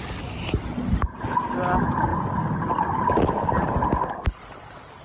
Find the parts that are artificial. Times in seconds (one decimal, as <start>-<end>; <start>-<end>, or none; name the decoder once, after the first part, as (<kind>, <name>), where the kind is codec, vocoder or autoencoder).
none